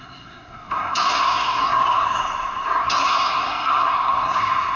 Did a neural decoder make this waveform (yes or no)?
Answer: yes